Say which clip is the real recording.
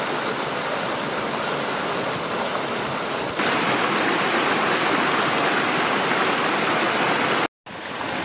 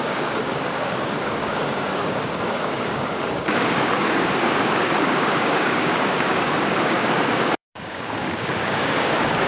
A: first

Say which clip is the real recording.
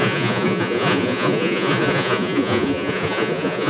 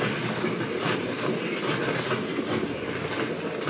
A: second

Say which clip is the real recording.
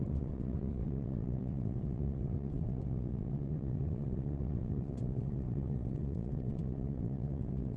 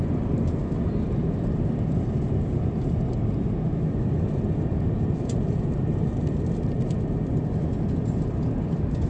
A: second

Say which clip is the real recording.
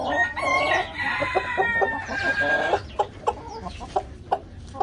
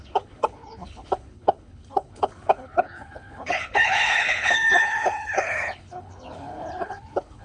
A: first